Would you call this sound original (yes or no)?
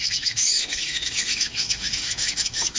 no